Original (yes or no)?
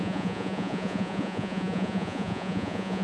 no